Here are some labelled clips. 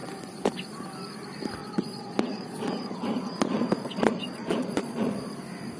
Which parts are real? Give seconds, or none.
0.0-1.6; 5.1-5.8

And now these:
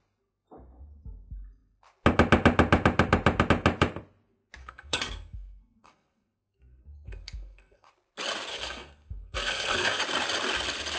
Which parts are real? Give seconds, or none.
0.0-4.6; 7.9-8.5; 10.0-11.0